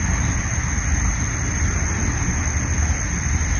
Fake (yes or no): no